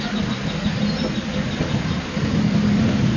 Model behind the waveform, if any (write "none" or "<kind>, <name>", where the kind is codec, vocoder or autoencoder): none